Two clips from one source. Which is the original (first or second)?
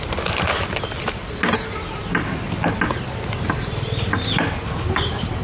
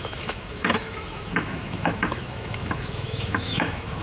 first